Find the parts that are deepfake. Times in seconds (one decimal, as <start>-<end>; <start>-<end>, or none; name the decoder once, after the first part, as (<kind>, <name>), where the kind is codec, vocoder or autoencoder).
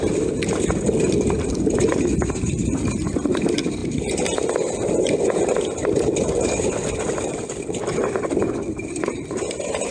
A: none